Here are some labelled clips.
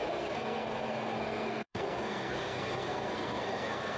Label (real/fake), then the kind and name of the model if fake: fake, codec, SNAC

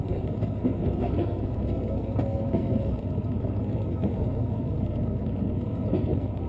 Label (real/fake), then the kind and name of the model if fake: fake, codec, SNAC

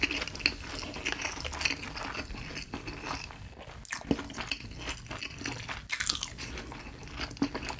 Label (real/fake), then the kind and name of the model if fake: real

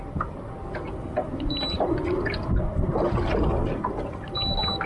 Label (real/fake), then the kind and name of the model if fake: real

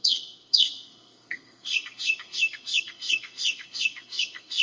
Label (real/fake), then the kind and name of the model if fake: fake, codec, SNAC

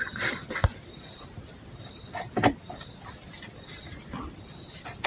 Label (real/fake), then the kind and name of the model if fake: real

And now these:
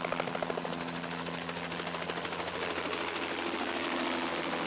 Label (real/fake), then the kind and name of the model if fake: real